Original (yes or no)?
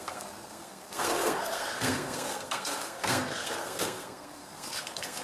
no